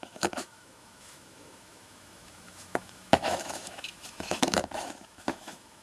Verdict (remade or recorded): remade